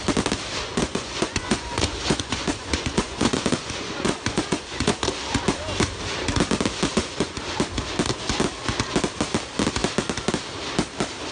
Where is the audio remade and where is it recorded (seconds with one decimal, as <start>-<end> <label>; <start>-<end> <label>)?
0.0-0.6 recorded; 0.6-5.1 remade; 5.1-6.9 recorded; 6.9-7.4 remade; 7.4-11.3 recorded